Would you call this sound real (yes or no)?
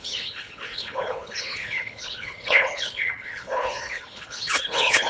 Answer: no